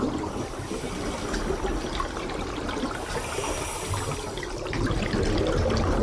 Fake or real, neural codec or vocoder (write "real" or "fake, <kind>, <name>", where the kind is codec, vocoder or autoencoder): real